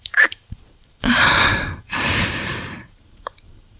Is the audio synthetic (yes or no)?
yes